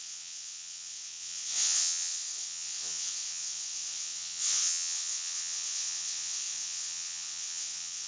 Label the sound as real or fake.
fake